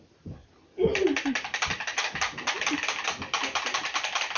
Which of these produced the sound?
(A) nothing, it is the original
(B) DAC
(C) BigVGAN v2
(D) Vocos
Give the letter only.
A